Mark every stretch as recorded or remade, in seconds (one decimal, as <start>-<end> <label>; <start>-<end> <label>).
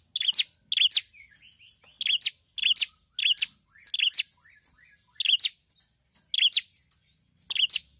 0.0-8.0 recorded